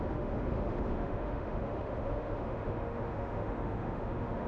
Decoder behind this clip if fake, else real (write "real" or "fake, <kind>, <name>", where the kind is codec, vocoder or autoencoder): fake, autoencoder, DAC-VAE